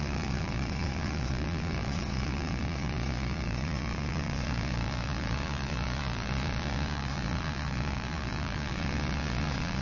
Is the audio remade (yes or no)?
yes